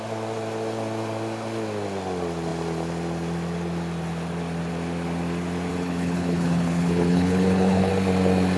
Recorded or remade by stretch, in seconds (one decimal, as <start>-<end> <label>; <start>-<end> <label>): 0.0-5.7 recorded; 5.7-7.9 remade; 7.9-8.6 recorded